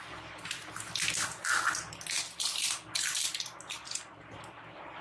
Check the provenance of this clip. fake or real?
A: real